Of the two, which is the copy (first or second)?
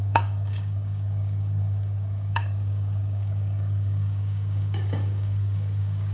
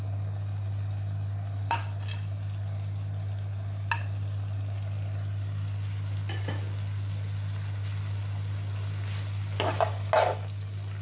first